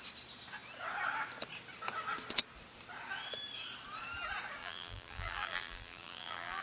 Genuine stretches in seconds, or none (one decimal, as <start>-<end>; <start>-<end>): 0.0-4.6